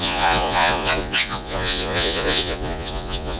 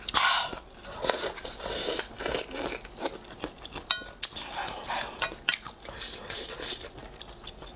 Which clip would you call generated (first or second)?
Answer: first